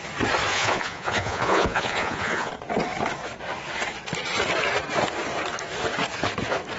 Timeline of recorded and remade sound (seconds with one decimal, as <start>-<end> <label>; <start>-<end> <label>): 0.0-0.5 recorded; 0.5-2.5 remade; 2.5-6.8 recorded